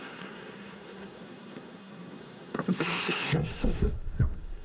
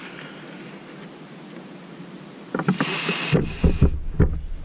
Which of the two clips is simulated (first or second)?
first